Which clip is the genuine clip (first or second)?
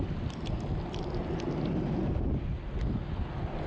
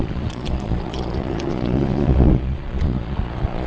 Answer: first